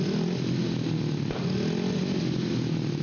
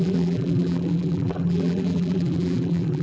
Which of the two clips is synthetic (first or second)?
second